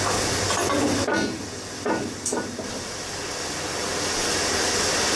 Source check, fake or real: real